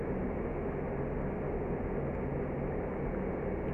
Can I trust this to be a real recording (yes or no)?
yes